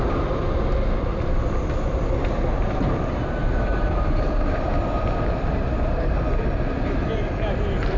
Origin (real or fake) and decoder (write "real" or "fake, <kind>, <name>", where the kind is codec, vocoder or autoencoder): real